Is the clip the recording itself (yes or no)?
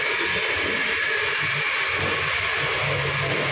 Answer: yes